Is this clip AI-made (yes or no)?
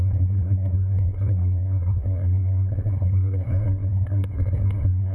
yes